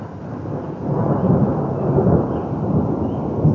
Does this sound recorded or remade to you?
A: recorded